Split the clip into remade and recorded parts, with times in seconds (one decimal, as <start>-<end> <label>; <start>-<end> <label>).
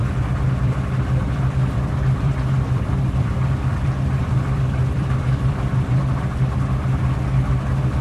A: 0.0-6.0 remade; 6.0-7.5 recorded; 7.5-8.0 remade